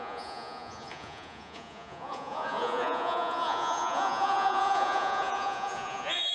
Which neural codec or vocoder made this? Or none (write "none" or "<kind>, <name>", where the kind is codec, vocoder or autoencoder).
vocoder, Vocos